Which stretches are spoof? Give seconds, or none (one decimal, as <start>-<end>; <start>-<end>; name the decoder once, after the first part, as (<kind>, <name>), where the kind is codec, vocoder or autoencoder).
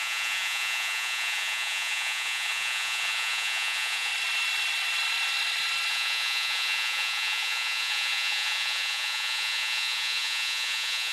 0.0-4.1 (vocoder, Vocos); 5.9-11.1